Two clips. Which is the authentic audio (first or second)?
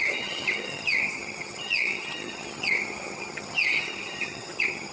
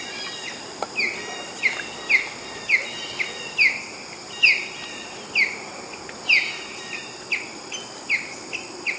second